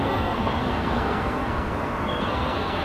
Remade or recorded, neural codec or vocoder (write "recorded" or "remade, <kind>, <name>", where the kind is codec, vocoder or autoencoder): remade, codec, SNAC